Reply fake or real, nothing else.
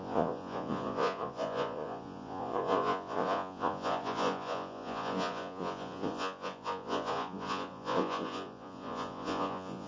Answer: fake